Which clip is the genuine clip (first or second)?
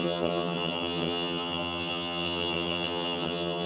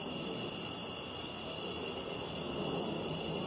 second